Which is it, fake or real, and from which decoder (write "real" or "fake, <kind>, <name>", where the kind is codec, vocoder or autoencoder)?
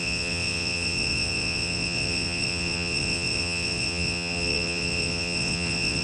fake, vocoder, WaveNeXt